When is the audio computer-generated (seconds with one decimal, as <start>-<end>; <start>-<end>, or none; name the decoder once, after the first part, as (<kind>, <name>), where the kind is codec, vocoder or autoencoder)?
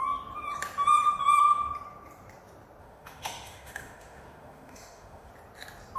2.8-5.3 (autoencoder, DAC-VAE)